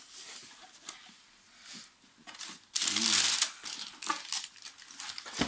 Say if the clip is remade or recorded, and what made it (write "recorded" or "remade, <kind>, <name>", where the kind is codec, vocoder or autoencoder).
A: recorded